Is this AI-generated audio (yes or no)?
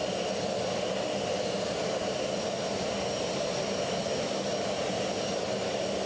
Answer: no